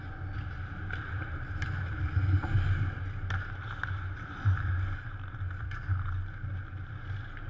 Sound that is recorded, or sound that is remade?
recorded